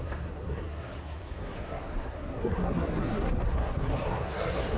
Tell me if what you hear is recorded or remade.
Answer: remade